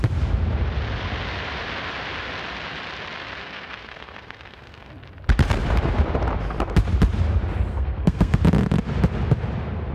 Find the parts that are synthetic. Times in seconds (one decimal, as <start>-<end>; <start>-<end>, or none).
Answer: 3.4-4.9; 7.7-8.4